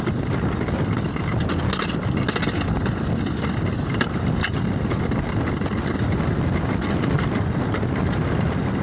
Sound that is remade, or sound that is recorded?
recorded